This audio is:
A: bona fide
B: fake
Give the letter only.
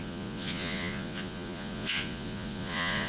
B